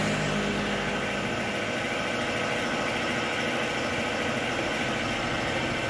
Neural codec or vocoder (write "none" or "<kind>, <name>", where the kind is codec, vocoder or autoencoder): none